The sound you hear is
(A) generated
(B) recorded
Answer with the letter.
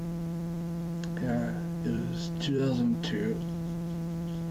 A